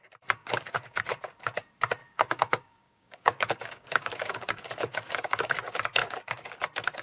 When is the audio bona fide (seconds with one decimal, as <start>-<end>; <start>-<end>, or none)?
0.0-0.4; 1.0-2.0; 5.5-6.0; 6.6-7.0